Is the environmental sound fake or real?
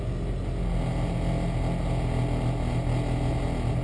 real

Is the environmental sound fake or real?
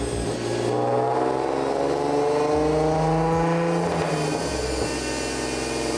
real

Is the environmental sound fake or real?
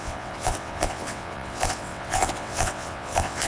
fake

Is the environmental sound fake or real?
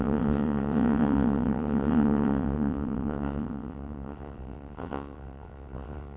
fake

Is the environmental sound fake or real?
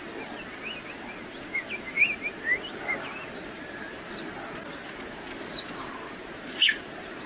real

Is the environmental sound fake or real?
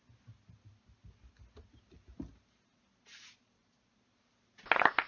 real